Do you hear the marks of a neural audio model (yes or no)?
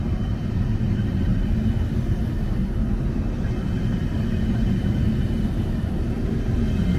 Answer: no